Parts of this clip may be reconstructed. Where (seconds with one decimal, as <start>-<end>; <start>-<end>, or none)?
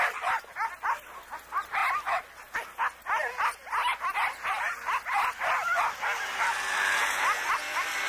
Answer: none